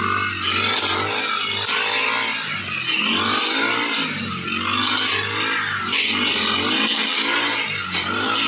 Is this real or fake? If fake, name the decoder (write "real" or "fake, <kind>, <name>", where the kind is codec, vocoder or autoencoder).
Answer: real